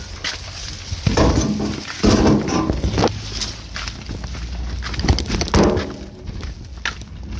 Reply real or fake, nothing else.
real